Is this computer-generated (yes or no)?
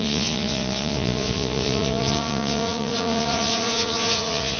yes